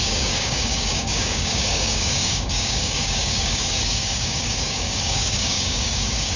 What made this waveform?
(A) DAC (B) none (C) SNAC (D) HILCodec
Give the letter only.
A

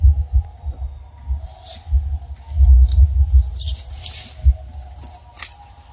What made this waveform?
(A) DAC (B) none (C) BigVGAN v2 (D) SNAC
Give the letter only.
B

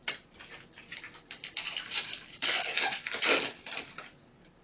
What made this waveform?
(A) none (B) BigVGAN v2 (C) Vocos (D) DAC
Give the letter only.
A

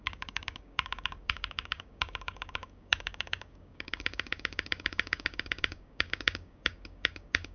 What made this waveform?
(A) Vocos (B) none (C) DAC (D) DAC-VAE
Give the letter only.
C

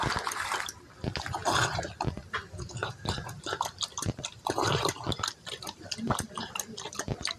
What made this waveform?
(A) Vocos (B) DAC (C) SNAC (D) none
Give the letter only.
D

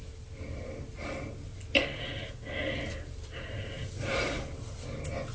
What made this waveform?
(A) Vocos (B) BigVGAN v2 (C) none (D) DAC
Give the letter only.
C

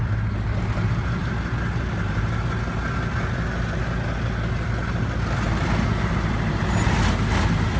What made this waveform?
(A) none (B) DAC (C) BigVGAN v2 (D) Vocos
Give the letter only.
A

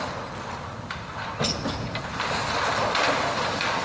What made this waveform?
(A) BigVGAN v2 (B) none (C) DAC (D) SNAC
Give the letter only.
B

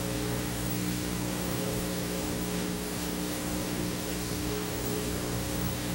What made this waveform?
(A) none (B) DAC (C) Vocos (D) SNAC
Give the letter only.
B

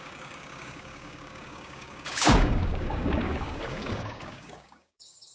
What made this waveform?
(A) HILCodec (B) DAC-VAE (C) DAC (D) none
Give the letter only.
C